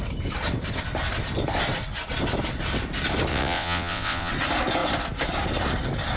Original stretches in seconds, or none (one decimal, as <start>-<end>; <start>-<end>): 0.0-3.3; 4.3-6.2